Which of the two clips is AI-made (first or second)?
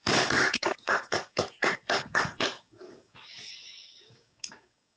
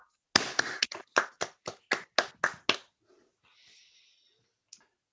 first